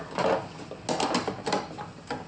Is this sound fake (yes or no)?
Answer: no